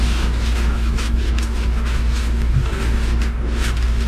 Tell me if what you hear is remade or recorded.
remade